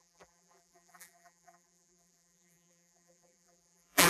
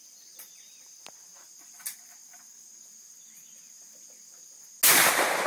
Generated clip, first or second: first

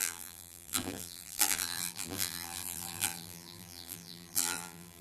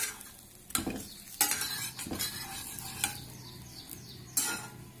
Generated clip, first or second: first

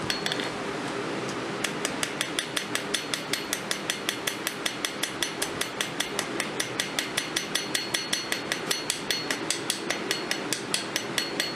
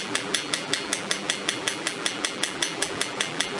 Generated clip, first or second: second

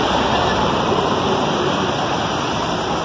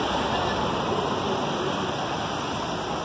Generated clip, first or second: first